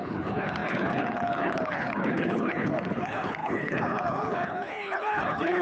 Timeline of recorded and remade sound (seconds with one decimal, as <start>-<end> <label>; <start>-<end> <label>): 0.0-5.6 remade